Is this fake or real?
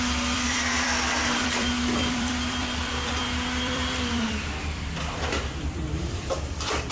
fake